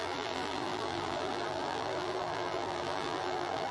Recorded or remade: remade